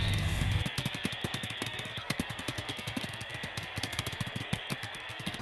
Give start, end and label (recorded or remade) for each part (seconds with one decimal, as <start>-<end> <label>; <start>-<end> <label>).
0.0-5.4 remade